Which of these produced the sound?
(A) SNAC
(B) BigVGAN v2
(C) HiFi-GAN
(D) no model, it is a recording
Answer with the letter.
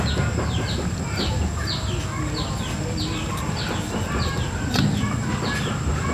D